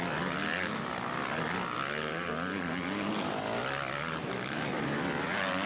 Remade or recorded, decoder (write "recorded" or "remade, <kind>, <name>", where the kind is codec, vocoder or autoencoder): recorded